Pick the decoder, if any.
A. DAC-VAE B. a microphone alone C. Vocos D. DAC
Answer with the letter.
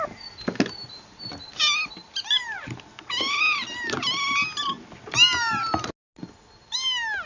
B